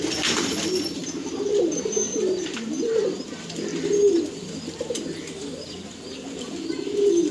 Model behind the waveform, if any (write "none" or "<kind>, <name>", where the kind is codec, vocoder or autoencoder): vocoder, BigVGAN v2